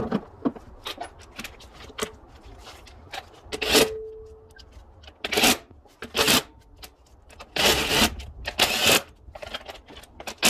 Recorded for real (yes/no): yes